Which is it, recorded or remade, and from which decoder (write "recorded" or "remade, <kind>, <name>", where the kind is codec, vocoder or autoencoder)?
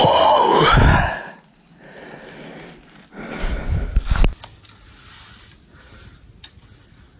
recorded